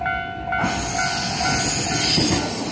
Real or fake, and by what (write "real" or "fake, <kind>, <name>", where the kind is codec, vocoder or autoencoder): real